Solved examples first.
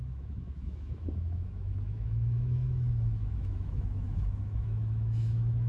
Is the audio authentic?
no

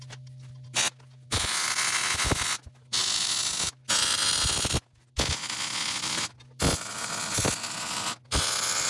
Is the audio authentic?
yes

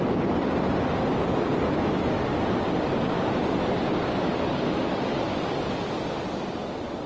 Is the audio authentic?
yes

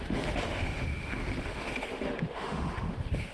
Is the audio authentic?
no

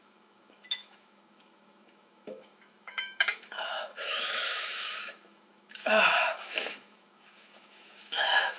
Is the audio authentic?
no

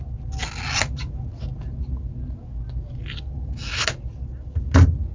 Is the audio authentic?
yes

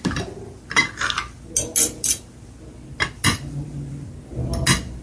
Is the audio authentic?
yes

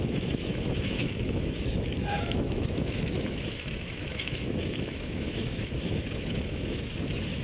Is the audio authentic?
no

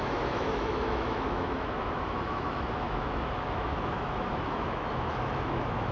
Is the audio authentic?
no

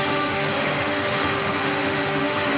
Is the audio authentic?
no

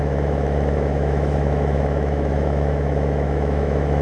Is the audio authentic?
no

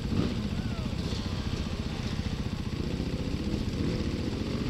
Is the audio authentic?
yes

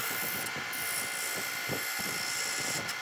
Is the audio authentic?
yes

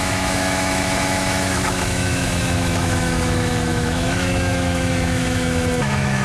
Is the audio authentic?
no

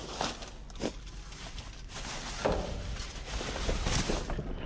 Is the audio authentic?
yes